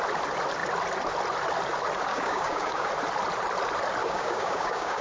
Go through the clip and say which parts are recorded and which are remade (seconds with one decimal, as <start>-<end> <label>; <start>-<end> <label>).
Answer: 0.0-2.1 recorded; 2.1-2.9 remade; 2.9-4.0 recorded; 4.0-5.0 remade